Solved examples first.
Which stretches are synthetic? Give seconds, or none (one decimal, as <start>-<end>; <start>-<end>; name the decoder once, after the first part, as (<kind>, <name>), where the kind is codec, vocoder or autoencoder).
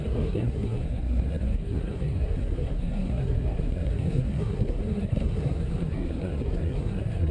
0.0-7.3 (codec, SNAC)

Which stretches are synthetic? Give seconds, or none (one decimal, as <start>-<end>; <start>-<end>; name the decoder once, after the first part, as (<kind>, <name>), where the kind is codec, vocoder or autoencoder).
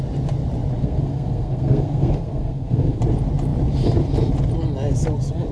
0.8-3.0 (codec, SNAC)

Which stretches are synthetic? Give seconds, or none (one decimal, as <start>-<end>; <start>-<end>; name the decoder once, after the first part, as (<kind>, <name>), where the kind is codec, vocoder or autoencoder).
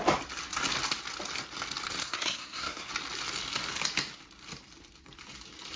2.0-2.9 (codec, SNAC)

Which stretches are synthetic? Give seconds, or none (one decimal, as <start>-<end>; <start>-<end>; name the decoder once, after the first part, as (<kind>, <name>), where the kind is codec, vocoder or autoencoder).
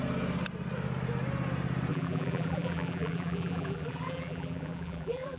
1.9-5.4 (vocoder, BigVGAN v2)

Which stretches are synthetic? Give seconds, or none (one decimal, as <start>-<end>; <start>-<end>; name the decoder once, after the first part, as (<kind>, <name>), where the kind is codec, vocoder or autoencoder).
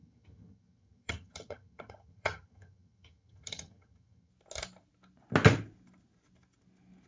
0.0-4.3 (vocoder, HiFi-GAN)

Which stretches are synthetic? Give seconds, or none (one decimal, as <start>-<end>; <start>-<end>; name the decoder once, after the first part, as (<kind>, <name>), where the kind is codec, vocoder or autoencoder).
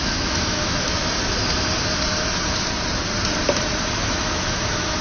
0.0-1.0 (autoencoder, DAC-VAE); 4.0-5.0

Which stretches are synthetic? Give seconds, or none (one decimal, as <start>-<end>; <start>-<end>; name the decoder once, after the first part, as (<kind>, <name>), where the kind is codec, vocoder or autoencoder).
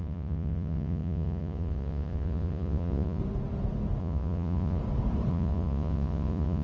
0.0-3.2 (vocoder, Vocos); 4.0-4.8; 5.3-6.6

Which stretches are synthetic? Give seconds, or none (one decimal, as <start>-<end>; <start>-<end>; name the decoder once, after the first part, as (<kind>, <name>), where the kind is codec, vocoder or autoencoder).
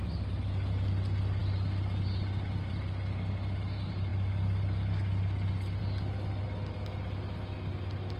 none